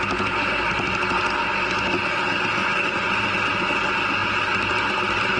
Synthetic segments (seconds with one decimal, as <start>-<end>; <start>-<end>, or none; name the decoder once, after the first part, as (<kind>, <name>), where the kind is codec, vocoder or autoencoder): 2.6-3.3 (vocoder, Vocos)